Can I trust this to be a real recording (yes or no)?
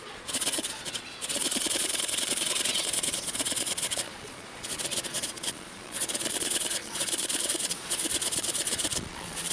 no